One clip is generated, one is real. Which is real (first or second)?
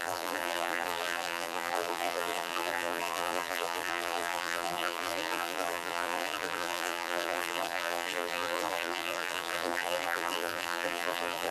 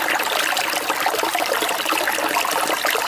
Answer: second